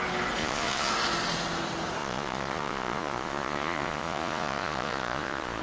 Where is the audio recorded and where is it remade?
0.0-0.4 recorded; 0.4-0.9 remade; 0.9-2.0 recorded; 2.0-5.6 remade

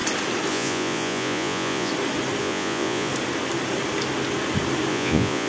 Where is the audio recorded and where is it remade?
0.0-0.5 recorded; 0.5-1.9 remade; 1.9-2.4 recorded; 2.4-3.1 remade; 3.1-4.9 recorded; 4.9-5.5 remade